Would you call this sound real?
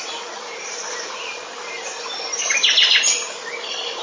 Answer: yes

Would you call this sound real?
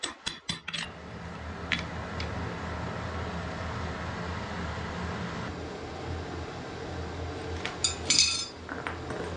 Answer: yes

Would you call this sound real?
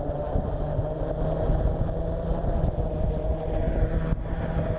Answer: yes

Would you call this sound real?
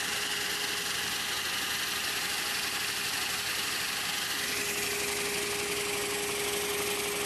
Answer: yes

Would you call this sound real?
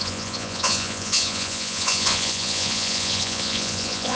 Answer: no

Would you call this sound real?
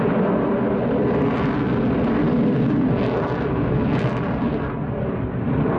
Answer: yes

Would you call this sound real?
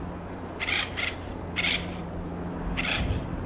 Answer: no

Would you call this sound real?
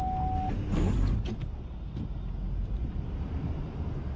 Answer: yes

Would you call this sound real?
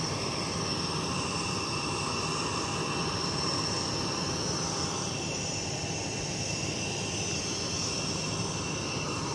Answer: yes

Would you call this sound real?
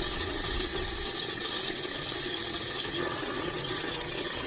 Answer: no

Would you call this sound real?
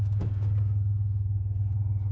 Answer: no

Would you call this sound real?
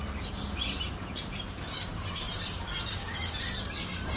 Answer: no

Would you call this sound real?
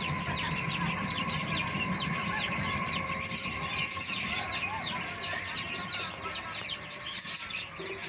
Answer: yes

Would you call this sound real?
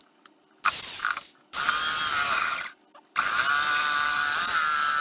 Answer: no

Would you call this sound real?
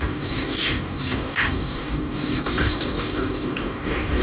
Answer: no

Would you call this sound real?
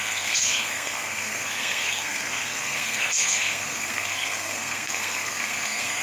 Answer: no